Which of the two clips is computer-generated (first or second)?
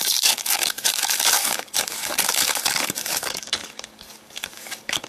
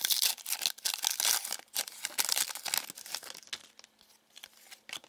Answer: first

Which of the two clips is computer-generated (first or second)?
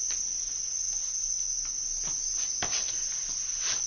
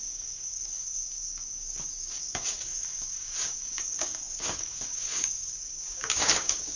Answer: second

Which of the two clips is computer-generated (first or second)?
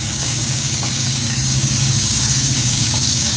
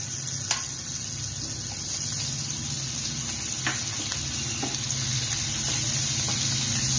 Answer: first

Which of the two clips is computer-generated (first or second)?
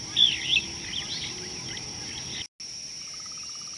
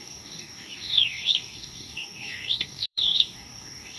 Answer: second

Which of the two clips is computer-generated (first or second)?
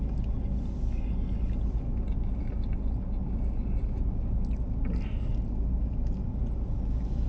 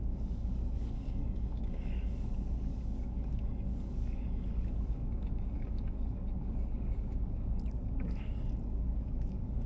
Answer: second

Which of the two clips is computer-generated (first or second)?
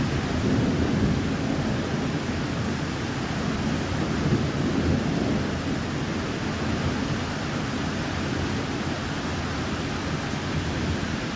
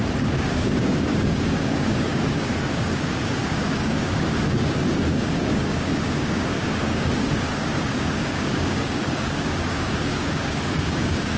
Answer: second